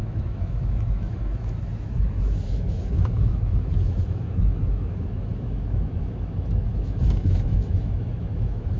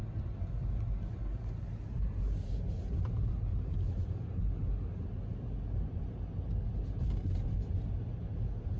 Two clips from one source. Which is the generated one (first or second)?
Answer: first